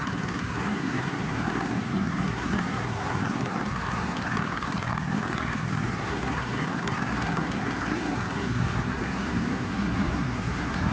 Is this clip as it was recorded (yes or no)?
no